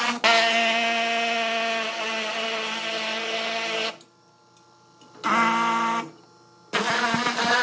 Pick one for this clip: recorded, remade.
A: recorded